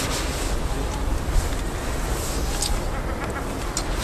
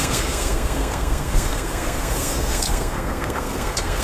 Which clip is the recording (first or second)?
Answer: first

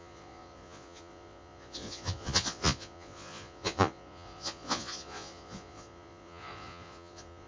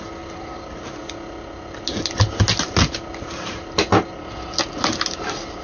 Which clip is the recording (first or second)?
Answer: second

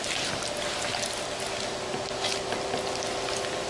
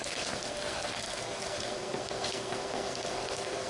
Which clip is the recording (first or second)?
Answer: first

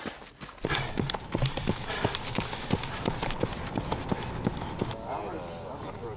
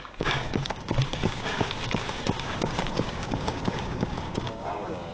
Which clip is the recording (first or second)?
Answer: first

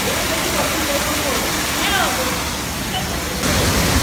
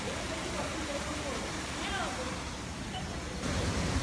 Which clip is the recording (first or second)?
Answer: first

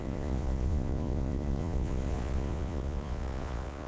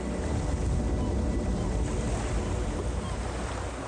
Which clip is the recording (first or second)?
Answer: second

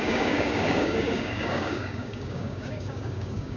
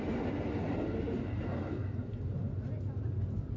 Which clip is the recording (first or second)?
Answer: second